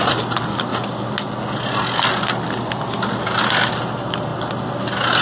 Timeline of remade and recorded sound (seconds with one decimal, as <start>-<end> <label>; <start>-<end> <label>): 0.0-5.2 recorded